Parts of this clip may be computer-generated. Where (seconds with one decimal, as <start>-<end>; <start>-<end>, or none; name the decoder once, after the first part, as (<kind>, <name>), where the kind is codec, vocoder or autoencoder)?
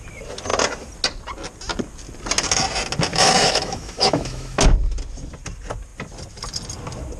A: 3.1-4.6 (autoencoder, DAC-VAE)